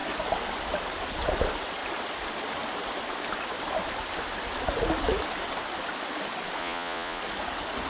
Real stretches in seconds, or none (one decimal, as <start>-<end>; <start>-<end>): 0.0-6.6; 7.2-7.9